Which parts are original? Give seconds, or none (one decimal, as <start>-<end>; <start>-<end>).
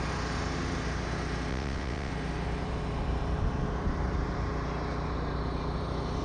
0.0-1.5; 2.1-6.2